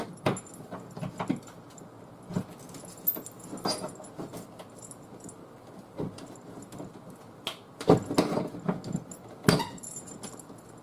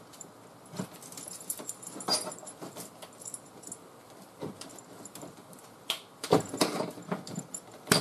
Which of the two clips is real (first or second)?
first